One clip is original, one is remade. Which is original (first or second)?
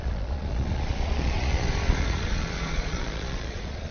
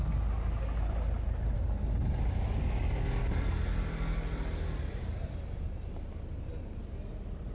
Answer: second